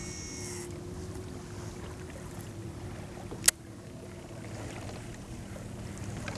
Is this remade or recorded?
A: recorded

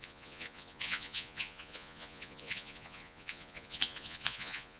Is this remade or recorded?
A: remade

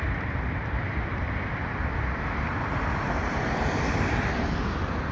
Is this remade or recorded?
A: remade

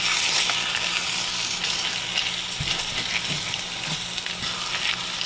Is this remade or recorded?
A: recorded